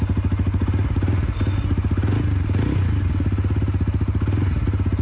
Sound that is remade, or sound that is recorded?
recorded